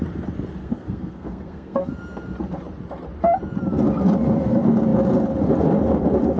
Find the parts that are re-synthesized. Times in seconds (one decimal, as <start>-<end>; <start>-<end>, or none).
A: 0.6-1.9